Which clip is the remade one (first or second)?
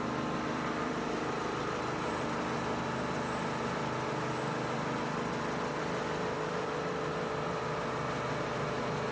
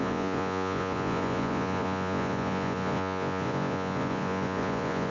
second